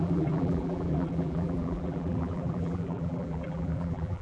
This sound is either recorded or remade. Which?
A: remade